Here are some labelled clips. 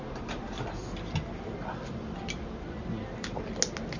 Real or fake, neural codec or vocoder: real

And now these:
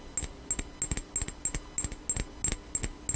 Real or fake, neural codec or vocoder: real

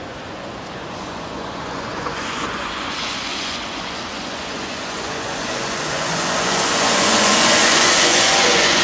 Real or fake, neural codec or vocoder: fake, vocoder, Vocos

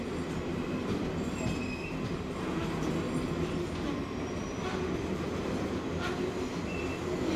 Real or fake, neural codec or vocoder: real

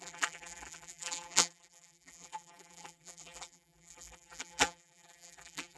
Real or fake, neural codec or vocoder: fake, vocoder, BigVGAN v2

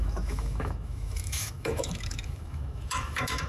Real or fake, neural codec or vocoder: fake, autoencoder, DAC-VAE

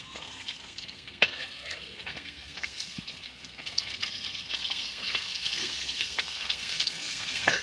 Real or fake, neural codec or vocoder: fake, codec, SNAC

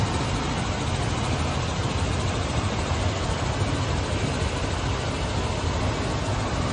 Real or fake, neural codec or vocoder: real